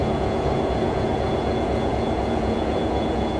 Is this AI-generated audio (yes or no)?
yes